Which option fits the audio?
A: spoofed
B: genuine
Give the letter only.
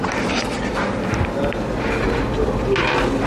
B